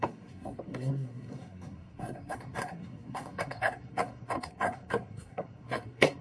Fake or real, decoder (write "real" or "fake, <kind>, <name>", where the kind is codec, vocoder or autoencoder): fake, codec, SNAC